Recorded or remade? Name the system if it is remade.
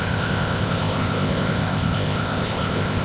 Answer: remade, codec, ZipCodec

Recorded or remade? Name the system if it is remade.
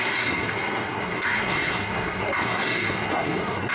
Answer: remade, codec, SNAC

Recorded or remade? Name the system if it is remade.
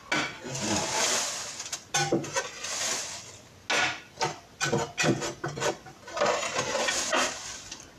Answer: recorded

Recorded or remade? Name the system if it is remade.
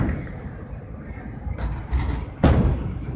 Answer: recorded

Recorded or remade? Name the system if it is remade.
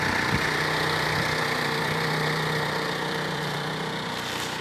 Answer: remade, vocoder, BigVGAN v2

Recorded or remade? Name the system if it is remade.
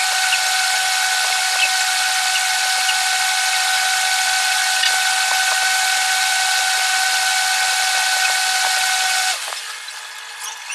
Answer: recorded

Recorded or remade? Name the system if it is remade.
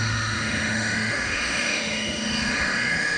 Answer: remade, autoencoder, DAC-VAE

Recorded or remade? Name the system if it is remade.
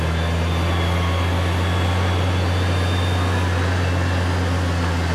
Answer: recorded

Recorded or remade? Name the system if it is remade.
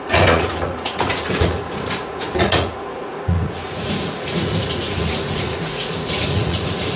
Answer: remade, vocoder, Vocos